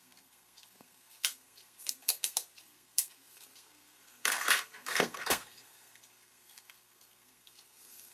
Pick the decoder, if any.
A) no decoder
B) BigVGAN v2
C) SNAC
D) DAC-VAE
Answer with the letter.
C